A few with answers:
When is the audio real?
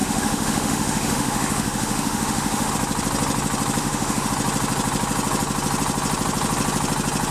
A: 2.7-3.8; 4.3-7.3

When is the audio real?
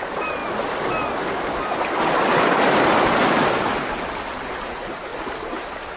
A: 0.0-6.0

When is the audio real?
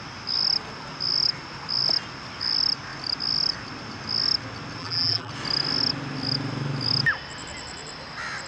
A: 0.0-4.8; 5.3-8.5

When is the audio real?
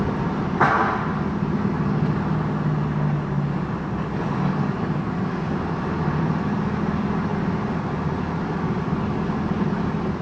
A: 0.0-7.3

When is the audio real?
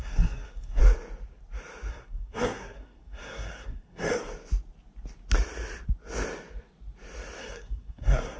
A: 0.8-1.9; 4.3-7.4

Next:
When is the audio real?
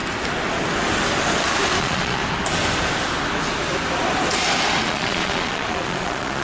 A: 0.0-1.8; 2.2-4.8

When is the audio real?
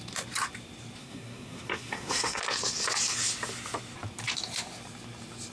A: 0.0-1.0; 2.4-5.5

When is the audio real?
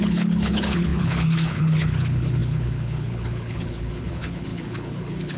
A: none